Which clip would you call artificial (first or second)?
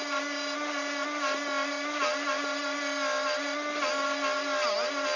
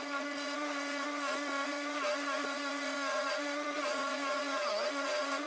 second